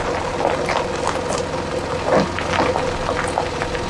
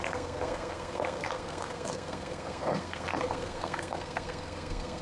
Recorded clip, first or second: first